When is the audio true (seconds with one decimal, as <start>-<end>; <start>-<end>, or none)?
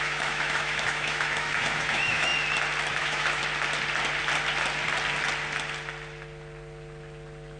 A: 2.3-3.0; 3.4-7.6